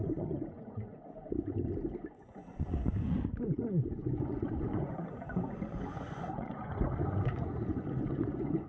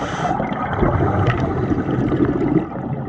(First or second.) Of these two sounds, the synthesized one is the first